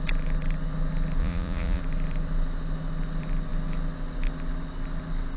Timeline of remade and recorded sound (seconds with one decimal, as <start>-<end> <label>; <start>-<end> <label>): 0.0-1.2 recorded; 1.2-1.8 remade; 1.8-5.4 recorded